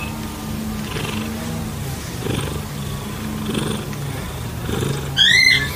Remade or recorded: recorded